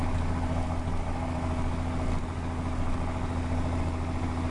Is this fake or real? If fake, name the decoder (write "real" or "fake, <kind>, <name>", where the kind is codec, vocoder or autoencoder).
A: real